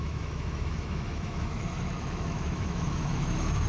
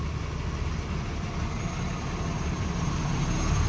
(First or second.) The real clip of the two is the second